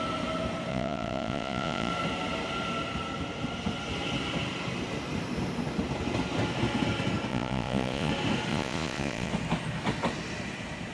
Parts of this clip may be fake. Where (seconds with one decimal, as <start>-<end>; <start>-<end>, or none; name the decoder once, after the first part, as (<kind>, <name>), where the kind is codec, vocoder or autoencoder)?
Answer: 0.7-1.9 (vocoder, Vocos); 7.3-8.1; 8.5-9.3